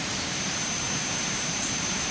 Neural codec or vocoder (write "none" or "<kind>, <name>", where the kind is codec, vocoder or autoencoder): vocoder, BigVGAN v2